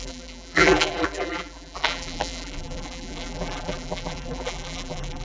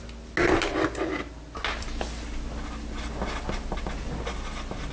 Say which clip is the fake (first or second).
first